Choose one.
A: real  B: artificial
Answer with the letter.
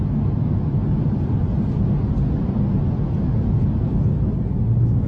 A